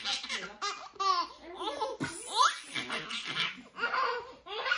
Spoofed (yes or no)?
no